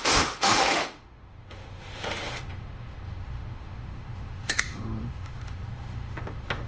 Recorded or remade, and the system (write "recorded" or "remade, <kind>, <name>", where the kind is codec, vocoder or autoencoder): remade, autoencoder, DAC-VAE